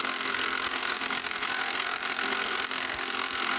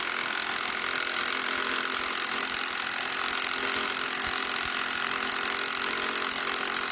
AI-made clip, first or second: first